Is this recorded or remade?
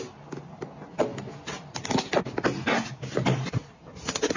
recorded